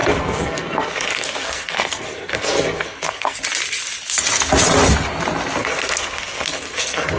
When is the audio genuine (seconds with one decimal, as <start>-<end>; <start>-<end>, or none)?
3.4-5.6